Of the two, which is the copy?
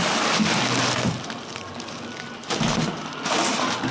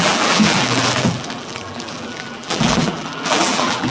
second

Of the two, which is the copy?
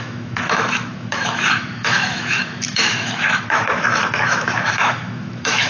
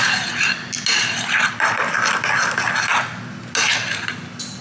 first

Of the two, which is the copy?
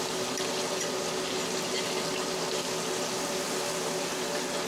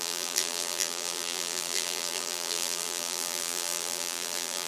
second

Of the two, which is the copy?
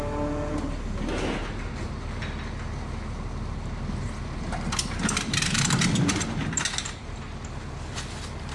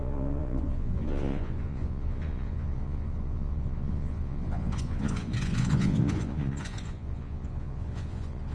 second